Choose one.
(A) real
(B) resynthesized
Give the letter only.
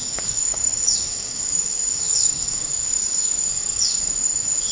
B